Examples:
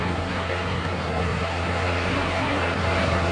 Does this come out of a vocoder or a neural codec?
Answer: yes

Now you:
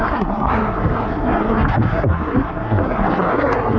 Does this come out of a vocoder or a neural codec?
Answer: yes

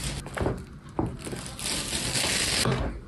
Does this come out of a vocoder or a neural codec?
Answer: no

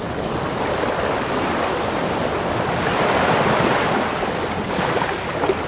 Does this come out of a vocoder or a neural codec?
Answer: no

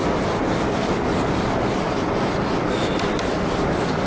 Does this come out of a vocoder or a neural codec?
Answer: no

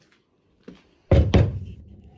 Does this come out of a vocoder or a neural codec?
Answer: no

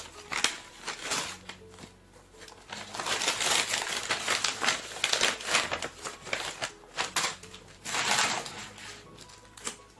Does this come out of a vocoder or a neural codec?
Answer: no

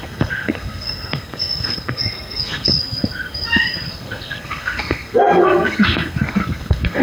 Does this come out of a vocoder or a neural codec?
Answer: yes